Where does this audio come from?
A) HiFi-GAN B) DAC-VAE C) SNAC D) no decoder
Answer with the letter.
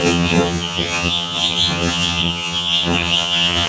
A